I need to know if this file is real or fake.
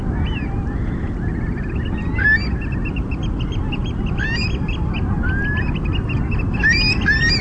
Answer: real